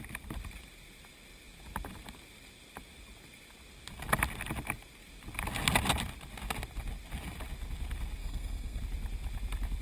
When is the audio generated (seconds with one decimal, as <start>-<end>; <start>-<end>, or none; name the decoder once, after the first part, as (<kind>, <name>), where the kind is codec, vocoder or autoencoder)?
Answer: 8.2-8.8 (codec, SNAC)